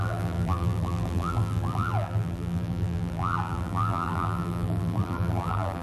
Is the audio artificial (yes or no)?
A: yes